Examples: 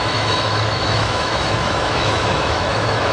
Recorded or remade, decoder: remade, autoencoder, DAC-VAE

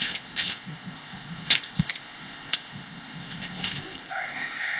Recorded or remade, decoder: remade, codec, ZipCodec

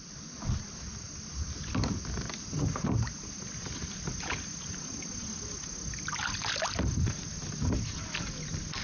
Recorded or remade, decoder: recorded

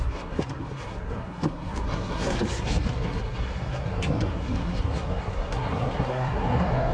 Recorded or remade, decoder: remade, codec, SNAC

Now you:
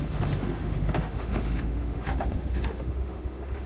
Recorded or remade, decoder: remade, autoencoder, DAC-VAE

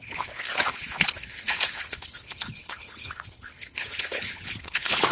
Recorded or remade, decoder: remade, codec, HILCodec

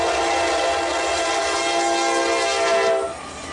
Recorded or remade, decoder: recorded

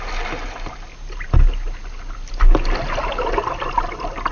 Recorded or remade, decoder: recorded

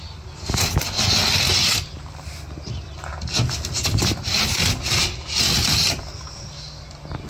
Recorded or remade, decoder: recorded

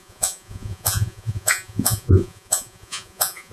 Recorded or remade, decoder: remade, vocoder, Vocos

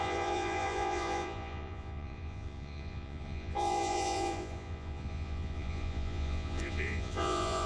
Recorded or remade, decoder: remade, vocoder, Vocos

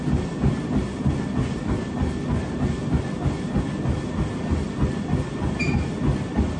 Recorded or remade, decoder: recorded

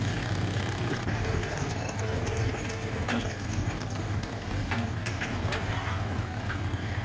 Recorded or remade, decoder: remade, codec, DAC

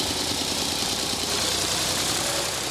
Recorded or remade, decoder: remade, vocoder, BigVGAN v2